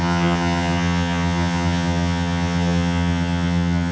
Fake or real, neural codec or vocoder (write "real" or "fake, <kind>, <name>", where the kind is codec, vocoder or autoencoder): fake, vocoder, HiFi-GAN